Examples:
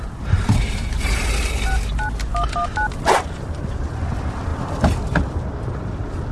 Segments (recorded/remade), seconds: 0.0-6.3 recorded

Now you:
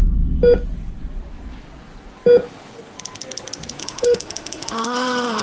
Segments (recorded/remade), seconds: 0.0-3.8 recorded; 3.8-5.4 remade

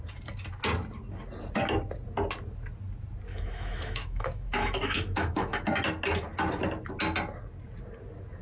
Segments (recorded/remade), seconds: 0.0-3.3 recorded; 3.3-5.8 remade; 5.8-8.4 recorded

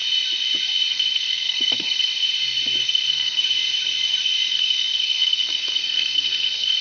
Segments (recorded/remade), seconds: 0.0-0.9 recorded; 0.9-2.1 remade; 2.1-2.8 recorded; 2.8-3.4 remade; 3.4-4.5 recorded; 4.5-6.8 remade

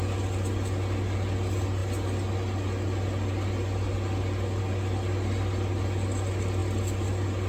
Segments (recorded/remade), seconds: 0.0-7.5 recorded